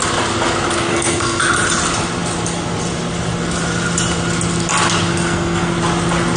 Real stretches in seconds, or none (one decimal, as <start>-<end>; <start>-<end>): 0.0-0.9; 1.4-5.1; 5.7-6.4